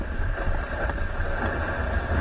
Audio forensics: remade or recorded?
recorded